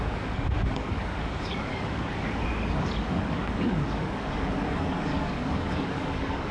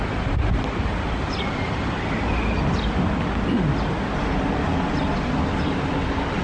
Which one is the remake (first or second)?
first